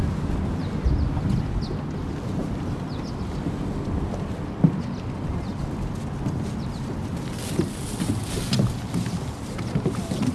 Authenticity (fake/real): real